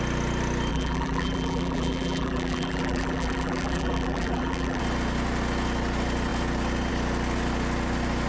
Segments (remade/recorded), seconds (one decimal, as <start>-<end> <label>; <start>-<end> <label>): 0.0-0.7 recorded; 0.7-4.8 remade; 4.8-8.3 recorded